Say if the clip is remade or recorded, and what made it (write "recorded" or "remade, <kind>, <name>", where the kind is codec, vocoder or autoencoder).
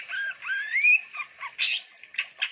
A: recorded